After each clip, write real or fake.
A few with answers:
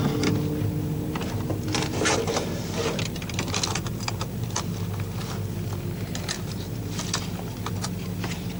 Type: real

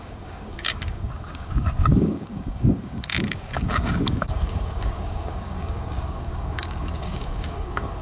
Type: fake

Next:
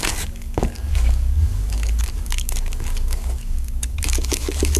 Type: fake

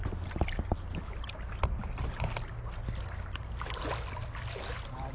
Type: real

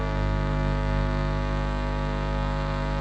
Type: fake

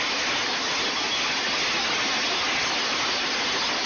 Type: real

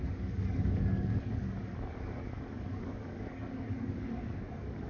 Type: fake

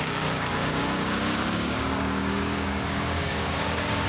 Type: fake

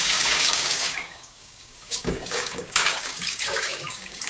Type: fake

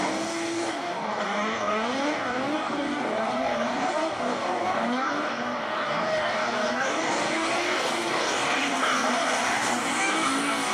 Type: fake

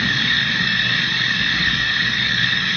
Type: fake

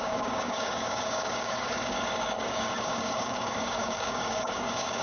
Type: fake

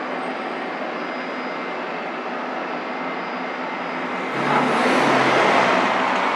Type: real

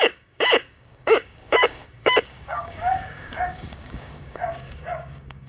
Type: fake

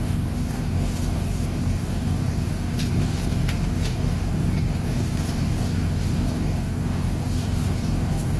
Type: fake